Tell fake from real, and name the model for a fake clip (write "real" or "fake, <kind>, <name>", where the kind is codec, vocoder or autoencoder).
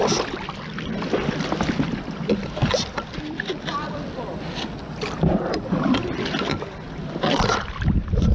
real